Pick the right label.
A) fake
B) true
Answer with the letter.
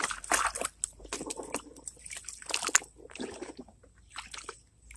B